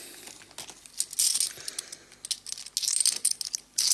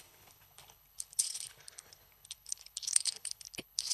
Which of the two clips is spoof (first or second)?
second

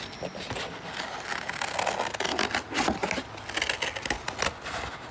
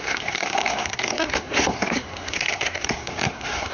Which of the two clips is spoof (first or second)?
second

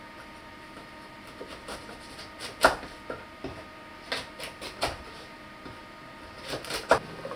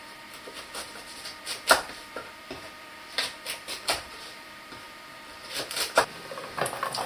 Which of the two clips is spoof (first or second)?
second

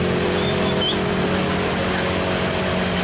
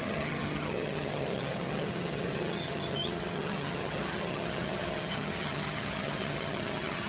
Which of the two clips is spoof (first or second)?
second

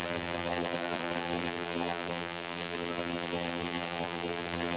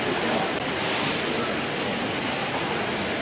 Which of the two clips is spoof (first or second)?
first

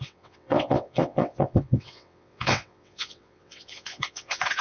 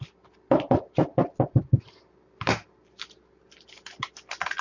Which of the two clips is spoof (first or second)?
first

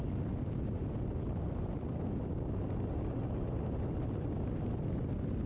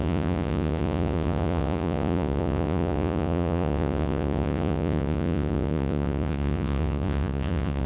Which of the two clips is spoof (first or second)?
second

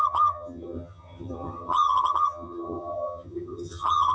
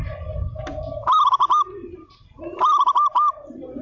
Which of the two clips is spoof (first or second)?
first